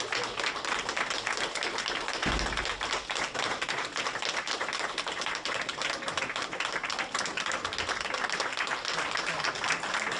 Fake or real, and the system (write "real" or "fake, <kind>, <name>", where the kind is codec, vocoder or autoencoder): real